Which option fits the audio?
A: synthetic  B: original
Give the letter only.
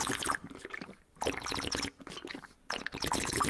B